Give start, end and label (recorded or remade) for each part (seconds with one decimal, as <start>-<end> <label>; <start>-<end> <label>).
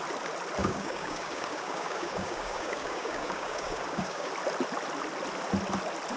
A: 0.0-0.6 recorded; 0.6-4.3 remade; 4.3-6.2 recorded